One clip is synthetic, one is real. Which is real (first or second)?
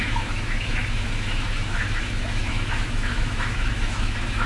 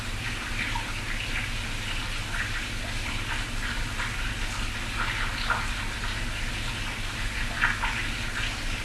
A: second